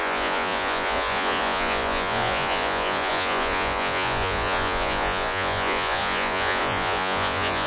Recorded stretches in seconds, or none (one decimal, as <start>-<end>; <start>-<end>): none